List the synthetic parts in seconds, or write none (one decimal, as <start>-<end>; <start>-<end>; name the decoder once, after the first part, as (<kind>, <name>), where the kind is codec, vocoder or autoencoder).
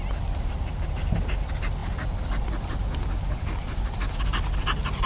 none